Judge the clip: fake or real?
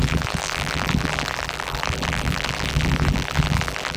fake